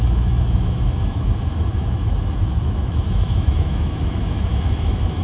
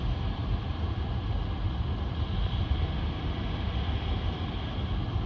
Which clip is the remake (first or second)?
first